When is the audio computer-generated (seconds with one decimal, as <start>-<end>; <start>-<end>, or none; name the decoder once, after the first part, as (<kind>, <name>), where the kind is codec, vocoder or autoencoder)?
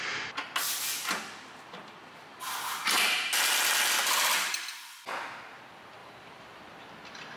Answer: 1.0-4.5 (vocoder, BigVGAN v2); 6.0-6.6